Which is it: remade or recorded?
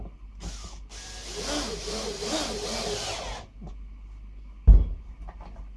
recorded